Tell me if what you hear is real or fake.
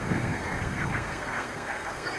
fake